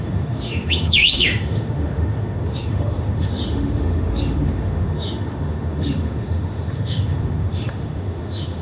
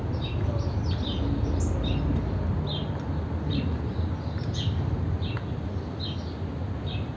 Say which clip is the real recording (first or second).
second